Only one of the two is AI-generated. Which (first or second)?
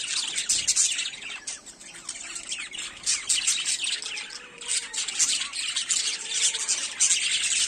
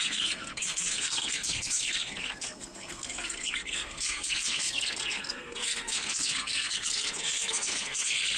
second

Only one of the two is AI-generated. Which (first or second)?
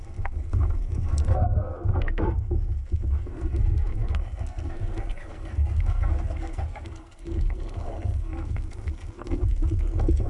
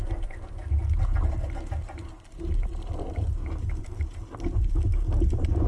first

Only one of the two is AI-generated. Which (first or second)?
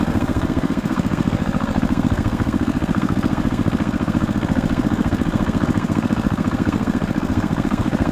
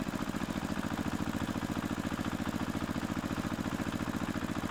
first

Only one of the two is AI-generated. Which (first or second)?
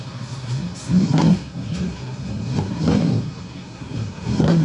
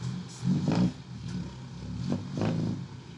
first